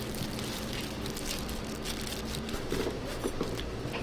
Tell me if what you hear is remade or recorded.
remade